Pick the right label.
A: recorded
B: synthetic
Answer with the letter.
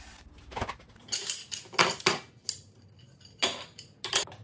A